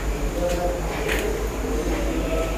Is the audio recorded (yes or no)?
yes